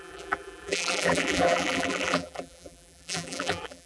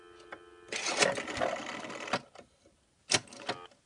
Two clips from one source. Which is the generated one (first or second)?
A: first